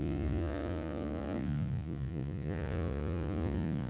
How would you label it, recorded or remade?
remade